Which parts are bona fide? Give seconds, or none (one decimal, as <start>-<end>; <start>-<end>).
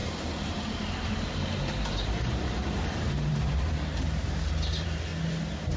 5.1-5.8